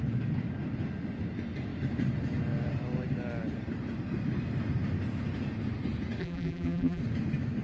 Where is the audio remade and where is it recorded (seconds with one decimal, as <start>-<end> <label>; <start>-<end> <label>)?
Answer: 0.0-6.2 recorded; 6.2-7.0 remade; 7.0-7.6 recorded